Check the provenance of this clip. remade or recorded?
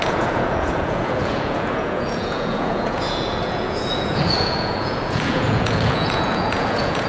remade